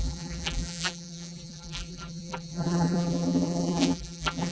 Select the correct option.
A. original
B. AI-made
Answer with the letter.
B